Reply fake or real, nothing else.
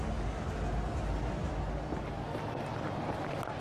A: real